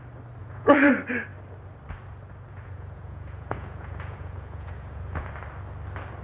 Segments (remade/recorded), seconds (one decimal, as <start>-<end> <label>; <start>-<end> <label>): 0.0-0.4 recorded; 0.4-0.9 remade; 0.9-2.5 recorded; 2.5-5.3 remade; 5.3-6.2 recorded